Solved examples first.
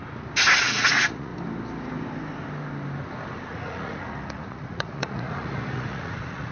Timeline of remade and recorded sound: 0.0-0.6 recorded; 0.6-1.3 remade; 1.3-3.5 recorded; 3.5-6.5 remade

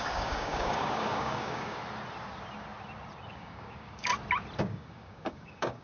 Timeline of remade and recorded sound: 0.0-1.8 remade; 1.8-3.3 recorded; 3.3-4.1 remade; 4.1-4.6 recorded; 4.6-5.8 remade